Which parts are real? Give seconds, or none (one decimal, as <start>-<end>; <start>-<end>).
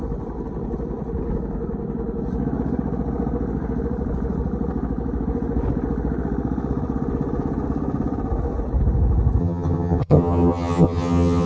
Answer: 0.0-9.4